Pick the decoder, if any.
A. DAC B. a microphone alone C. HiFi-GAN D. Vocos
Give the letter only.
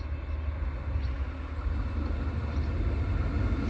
B